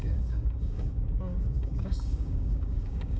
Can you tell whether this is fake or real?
fake